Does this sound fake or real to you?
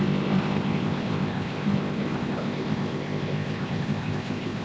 fake